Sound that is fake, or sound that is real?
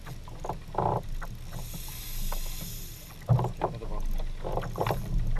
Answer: real